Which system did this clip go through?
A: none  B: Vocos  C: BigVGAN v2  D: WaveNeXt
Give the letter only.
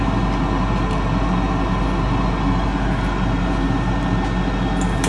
A